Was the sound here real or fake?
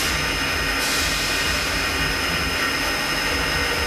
real